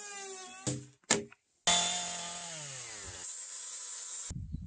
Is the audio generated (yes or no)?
no